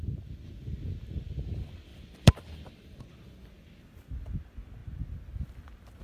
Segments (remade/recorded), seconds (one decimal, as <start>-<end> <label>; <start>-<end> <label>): 0.0-1.9 recorded; 1.9-3.0 remade; 3.0-6.0 recorded